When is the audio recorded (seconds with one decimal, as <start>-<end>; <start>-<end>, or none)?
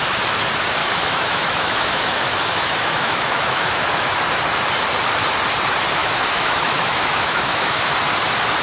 0.0-0.8; 4.2-6.0; 7.9-8.6